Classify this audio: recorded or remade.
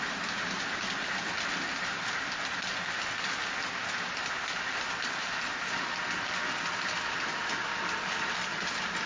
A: recorded